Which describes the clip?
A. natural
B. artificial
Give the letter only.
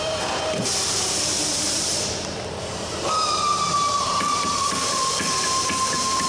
B